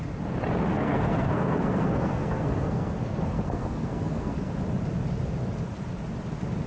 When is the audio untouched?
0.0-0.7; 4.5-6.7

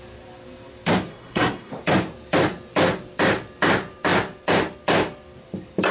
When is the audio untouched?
0.0-1.1; 1.7-5.9

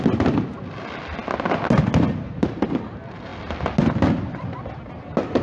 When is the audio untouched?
0.0-5.4

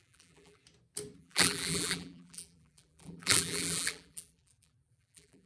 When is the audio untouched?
0.6-1.2

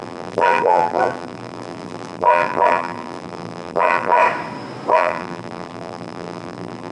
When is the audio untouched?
4.2-4.9

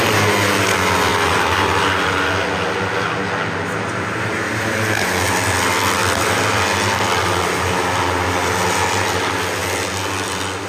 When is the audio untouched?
0.0-10.7

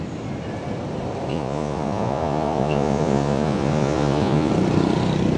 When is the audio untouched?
0.0-1.3; 4.5-5.4